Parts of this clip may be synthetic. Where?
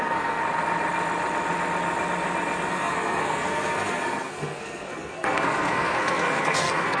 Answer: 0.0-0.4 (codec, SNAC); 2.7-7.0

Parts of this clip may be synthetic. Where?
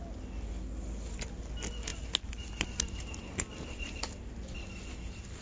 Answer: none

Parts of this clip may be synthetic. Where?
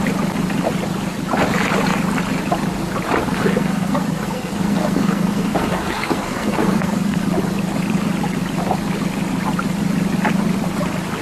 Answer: 3.2-7.2 (codec, SNAC)